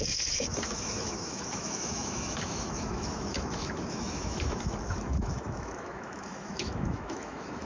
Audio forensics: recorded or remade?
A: remade